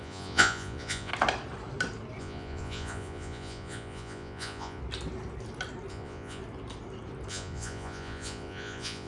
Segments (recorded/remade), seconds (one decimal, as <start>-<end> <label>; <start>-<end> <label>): 0.0-1.1 remade; 1.1-2.2 recorded; 2.2-4.8 remade; 4.8-5.9 recorded; 5.9-6.4 remade; 6.4-7.3 recorded; 7.3-9.1 remade